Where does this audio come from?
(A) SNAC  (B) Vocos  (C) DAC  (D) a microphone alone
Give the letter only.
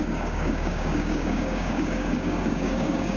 C